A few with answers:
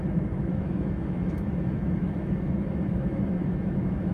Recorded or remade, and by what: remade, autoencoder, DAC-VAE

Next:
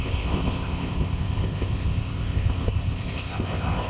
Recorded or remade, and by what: remade, codec, ZipCodec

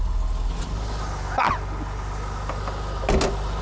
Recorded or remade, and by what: recorded